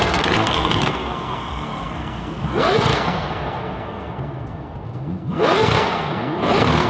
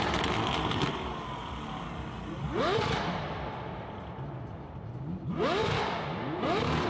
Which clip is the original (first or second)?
second